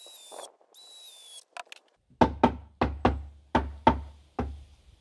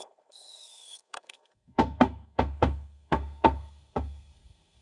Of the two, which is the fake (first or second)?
second